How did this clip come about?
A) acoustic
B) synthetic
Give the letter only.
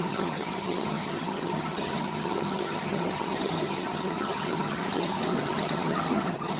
B